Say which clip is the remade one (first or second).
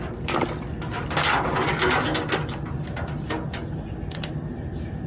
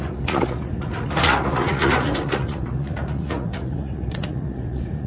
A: second